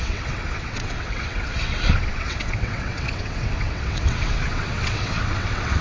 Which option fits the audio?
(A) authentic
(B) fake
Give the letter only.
B